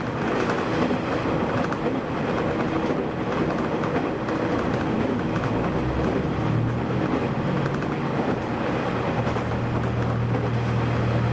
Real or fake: real